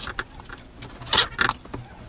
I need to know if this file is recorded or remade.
recorded